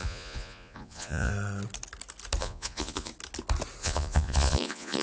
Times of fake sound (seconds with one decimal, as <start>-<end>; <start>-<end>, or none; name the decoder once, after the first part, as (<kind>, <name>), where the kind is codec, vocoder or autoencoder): 0.0-1.3 (vocoder, Vocos); 2.4-3.1; 3.8-5.0